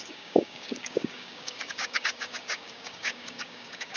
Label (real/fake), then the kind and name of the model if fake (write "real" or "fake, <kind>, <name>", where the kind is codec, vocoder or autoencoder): fake, codec, DAC